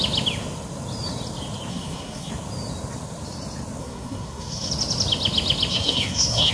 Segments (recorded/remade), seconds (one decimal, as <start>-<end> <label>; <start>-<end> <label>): 0.0-1.7 recorded; 1.7-2.3 remade; 2.3-3.8 recorded; 3.8-4.7 remade; 4.7-5.7 recorded; 5.7-6.5 remade